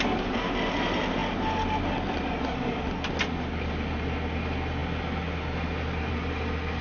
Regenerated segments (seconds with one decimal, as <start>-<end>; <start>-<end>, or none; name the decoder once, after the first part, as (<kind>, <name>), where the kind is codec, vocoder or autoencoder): none